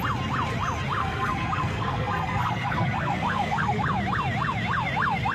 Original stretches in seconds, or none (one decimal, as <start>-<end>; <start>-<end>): 0.0-1.0; 3.8-5.3